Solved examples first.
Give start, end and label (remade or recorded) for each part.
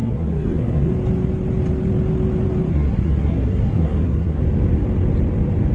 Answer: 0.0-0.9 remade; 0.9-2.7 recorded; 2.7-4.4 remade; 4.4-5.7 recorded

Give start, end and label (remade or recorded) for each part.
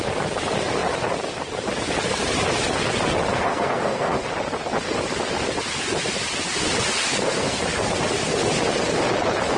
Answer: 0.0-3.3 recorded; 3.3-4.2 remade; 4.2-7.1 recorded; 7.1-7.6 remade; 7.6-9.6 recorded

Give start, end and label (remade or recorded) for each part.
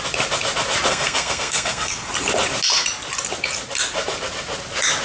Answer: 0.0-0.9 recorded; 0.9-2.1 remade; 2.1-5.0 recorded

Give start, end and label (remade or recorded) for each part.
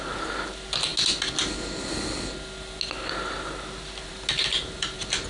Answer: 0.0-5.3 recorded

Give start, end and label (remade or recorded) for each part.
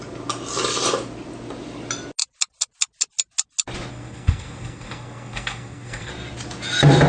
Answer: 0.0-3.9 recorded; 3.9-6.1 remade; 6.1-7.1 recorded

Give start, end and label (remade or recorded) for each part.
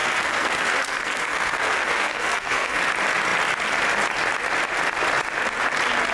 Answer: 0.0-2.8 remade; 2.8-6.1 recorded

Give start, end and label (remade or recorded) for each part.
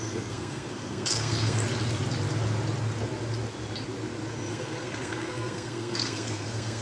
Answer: 0.0-1.6 remade; 1.6-4.5 recorded; 4.5-6.8 remade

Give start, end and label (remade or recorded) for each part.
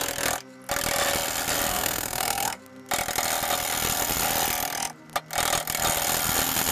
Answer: 0.0-1.7 recorded; 1.7-2.6 remade; 2.6-6.7 recorded